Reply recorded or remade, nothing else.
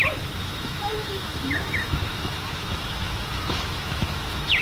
remade